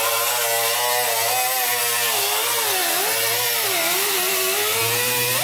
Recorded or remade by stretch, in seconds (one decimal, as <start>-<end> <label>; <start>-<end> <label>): 0.0-5.4 recorded